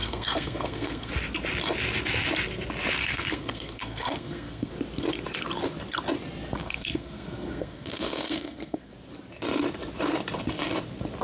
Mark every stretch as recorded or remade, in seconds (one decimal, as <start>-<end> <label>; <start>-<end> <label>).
0.0-1.1 remade; 1.1-3.0 recorded; 3.0-4.7 remade; 4.7-6.6 recorded; 6.6-8.9 remade; 8.9-11.2 recorded